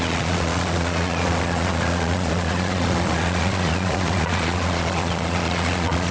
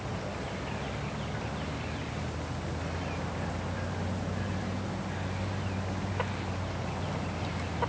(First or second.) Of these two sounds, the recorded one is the second